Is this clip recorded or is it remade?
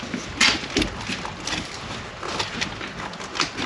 recorded